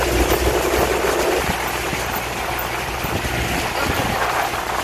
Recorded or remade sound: recorded